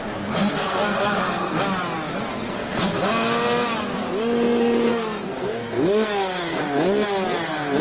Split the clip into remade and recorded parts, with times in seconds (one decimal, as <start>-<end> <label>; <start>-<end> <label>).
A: 0.0-0.5 recorded; 0.5-1.6 remade; 1.6-2.3 recorded; 2.3-3.1 remade; 3.1-4.9 recorded; 4.9-6.6 remade; 6.6-7.8 recorded